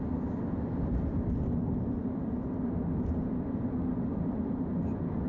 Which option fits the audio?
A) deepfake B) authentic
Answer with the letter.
B